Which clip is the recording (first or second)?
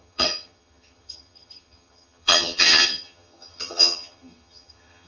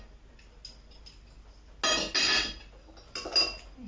second